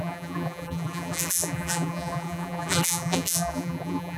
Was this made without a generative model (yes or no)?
no